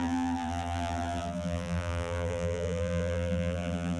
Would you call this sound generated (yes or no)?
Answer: yes